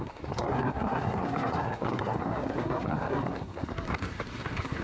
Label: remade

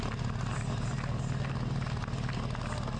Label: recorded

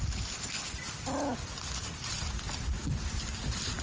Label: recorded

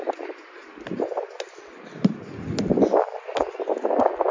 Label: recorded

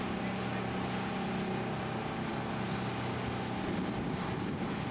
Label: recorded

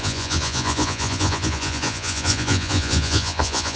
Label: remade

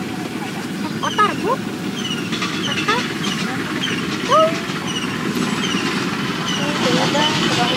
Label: recorded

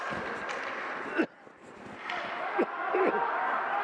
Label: recorded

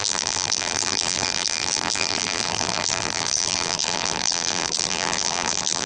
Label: remade